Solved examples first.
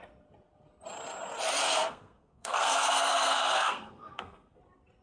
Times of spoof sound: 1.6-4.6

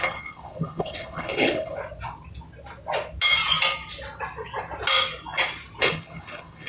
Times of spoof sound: 0.0-1.8; 5.8-6.7

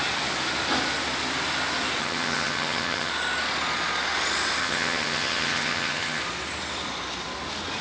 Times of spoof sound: 2.0-3.1; 4.6-6.2

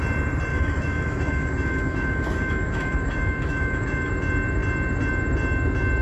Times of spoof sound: 0.5-4.1

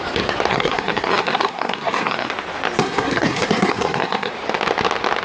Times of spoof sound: 0.5-2.3; 2.8-4.3

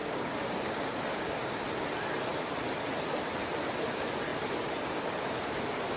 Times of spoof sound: 0.0-1.6

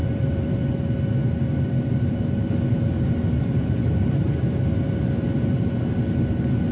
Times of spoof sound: 0.0-0.7; 1.2-2.2; 2.7-4.7

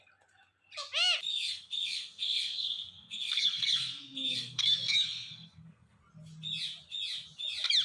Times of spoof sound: 1.3-6.0